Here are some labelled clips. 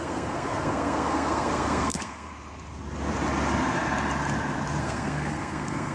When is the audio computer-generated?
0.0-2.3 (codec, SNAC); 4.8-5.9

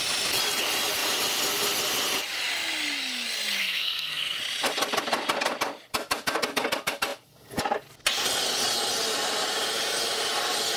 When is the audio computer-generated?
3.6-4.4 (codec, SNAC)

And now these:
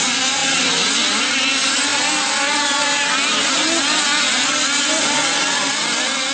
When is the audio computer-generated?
none

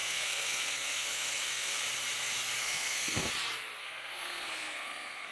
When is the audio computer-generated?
0.0-1.8 (codec, SNAC); 2.6-3.3; 3.8-5.3

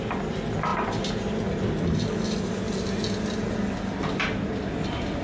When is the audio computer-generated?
none

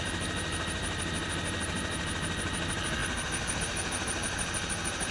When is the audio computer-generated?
none

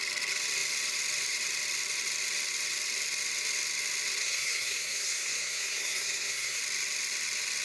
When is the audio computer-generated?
4.2-6.6 (codec, SNAC)